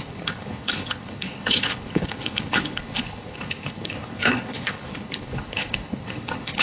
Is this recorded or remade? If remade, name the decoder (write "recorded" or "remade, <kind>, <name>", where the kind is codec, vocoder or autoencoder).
remade, codec, HILCodec